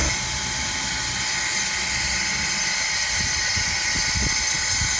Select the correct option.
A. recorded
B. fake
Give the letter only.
A